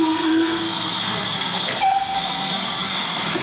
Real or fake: fake